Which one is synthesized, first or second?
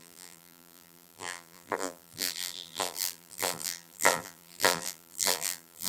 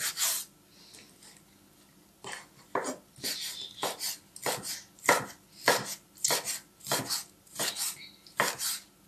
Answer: first